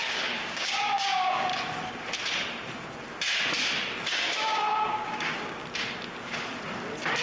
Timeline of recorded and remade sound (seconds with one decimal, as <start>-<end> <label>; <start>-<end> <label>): 0.0-1.5 remade; 1.5-4.0 recorded; 4.0-5.6 remade; 5.6-7.2 recorded